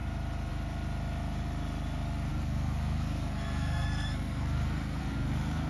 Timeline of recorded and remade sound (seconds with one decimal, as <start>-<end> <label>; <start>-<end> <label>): 0.0-2.3 recorded; 2.3-5.7 remade